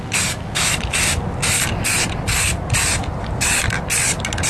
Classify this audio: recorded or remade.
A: recorded